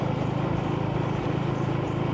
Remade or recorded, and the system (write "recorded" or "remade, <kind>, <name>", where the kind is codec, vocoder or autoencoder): recorded